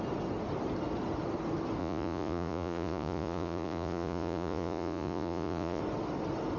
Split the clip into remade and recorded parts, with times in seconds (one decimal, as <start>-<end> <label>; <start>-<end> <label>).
0.0-1.8 recorded; 1.8-5.8 remade; 5.8-6.6 recorded